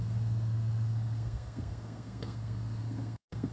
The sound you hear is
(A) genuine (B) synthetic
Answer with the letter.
B